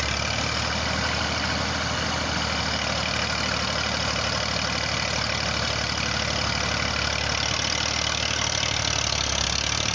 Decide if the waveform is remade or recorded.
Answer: recorded